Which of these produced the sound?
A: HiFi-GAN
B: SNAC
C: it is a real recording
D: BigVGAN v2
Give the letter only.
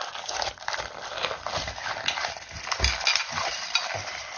C